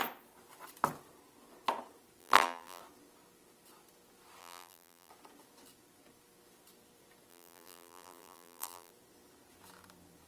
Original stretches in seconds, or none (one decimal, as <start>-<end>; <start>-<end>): 0.0-2.2; 2.8-4.4; 5.1-7.3; 8.9-10.3